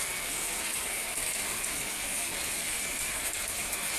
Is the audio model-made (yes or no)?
yes